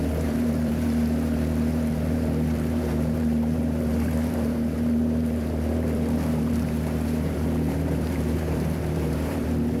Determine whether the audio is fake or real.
fake